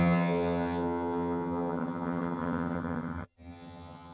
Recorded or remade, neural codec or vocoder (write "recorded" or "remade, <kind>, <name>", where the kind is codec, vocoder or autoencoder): remade, vocoder, HiFi-GAN